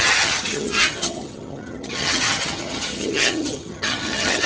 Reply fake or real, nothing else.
fake